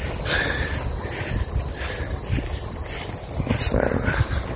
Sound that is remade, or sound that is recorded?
recorded